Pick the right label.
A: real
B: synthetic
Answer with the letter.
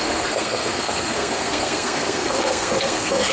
B